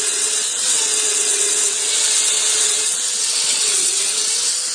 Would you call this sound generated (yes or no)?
yes